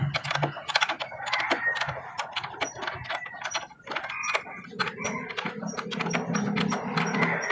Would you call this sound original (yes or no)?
yes